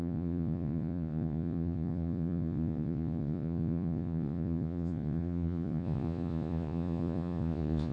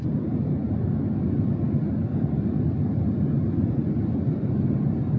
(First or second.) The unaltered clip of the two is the second